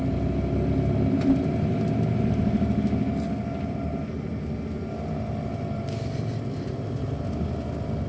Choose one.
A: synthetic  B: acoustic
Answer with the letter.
B